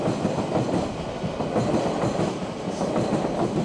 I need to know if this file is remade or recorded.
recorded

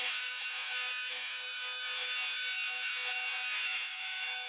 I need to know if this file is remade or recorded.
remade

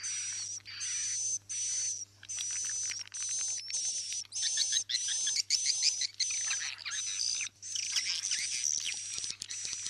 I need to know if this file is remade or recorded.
recorded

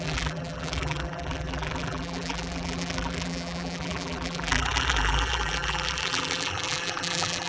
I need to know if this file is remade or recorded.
remade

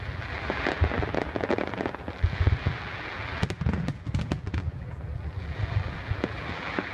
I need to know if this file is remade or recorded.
remade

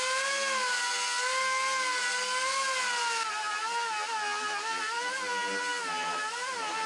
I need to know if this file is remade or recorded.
recorded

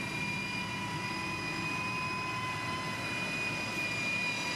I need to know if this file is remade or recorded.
recorded